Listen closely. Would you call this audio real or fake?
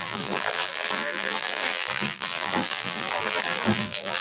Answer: fake